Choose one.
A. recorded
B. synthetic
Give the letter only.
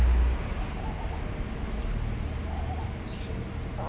A